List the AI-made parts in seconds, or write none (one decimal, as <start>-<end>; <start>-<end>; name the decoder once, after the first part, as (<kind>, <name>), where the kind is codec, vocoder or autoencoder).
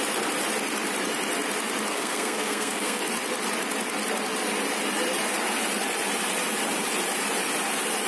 1.9-3.0 (codec, SNAC)